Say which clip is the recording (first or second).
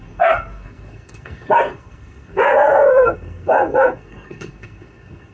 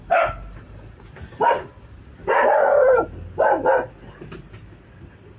second